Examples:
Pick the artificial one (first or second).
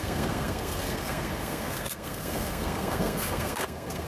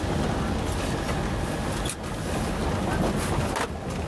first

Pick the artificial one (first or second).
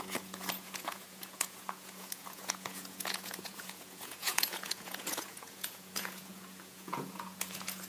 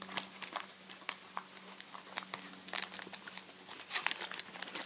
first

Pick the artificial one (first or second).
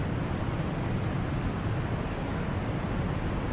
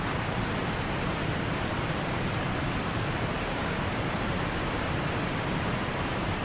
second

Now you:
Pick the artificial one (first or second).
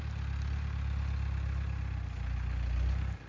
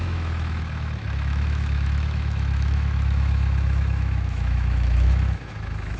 second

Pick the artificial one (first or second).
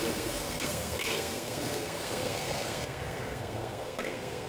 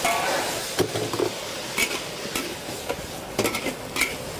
first